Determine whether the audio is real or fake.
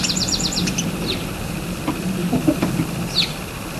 fake